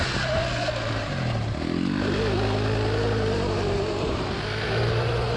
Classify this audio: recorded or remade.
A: recorded